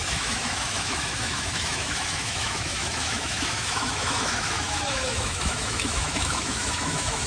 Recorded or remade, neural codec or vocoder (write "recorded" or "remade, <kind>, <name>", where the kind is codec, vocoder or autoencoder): remade, autoencoder, DAC-VAE